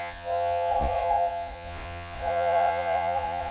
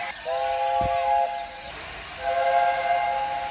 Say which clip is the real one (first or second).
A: second